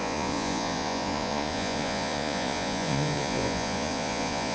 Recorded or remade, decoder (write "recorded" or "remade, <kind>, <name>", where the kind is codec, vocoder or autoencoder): remade, vocoder, Vocos